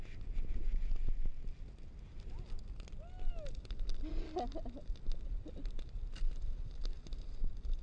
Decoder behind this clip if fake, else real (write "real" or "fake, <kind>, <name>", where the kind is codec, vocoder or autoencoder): real